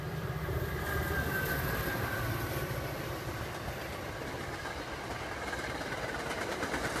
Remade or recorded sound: remade